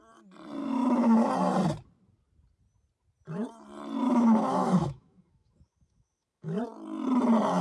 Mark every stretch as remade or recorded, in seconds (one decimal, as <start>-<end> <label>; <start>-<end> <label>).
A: 0.0-0.6 recorded; 0.6-1.3 remade; 1.3-4.0 recorded; 4.0-6.6 remade; 6.6-7.6 recorded